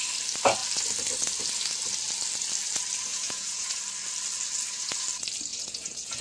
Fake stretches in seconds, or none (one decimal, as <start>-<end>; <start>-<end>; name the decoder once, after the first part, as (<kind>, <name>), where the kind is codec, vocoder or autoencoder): 3.1-3.8 (vocoder, Vocos); 5.5-6.2